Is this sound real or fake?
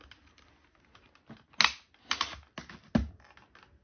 real